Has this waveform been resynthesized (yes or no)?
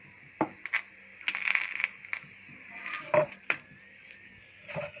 no